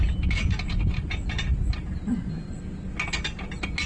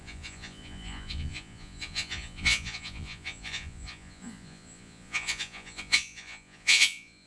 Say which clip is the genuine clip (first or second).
first